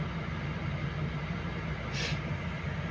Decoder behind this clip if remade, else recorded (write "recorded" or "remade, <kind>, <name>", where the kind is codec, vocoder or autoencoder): recorded